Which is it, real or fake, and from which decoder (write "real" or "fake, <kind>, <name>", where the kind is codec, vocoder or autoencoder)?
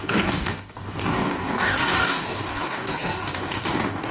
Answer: fake, codec, DAC